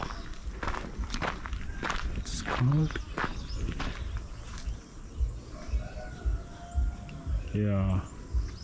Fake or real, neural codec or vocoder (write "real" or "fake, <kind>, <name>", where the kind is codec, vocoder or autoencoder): real